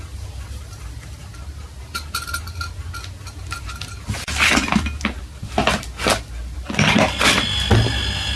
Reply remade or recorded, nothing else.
recorded